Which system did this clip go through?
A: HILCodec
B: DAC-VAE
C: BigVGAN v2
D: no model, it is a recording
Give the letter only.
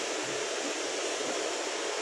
D